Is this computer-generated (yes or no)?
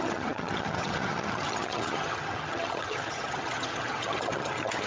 yes